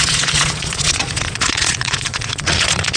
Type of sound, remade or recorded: remade